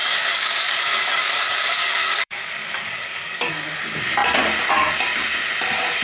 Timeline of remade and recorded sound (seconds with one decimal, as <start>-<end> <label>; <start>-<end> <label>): 0.0-3.5 remade; 3.5-6.0 recorded